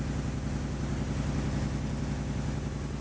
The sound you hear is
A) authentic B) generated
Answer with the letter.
A